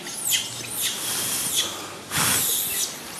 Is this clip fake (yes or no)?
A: no